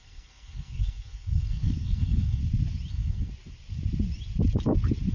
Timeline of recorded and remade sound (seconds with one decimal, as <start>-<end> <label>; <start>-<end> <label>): 0.0-2.4 remade; 2.4-2.9 recorded; 2.9-3.3 remade; 3.3-5.1 recorded